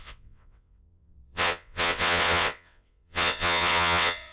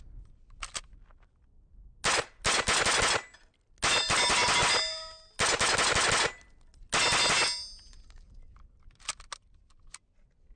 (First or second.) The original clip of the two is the second